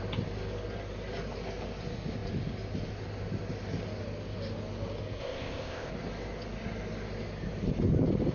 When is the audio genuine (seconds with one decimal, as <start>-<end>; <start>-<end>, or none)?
0.0-5.2; 5.9-8.3